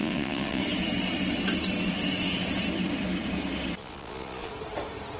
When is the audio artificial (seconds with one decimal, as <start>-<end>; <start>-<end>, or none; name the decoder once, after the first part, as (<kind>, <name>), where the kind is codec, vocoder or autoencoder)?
0.0-0.6 (vocoder, Vocos); 3.8-4.5